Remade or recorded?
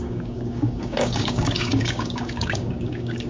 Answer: remade